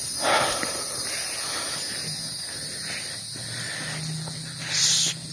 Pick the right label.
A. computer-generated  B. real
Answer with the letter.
B